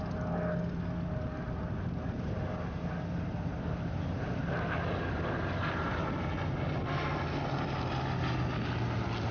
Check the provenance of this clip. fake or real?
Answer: real